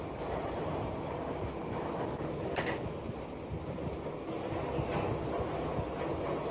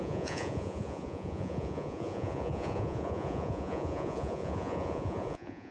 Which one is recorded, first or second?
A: first